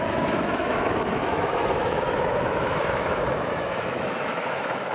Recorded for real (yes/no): no